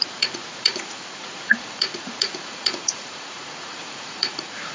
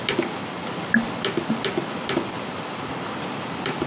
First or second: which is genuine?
second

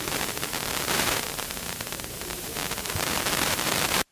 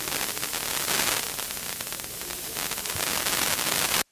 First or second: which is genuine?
second